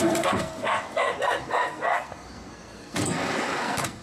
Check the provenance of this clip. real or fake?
fake